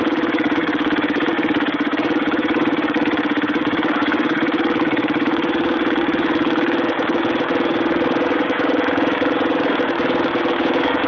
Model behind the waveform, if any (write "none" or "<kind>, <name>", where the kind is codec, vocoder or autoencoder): codec, DAC